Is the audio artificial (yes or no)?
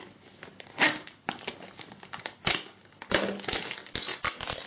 no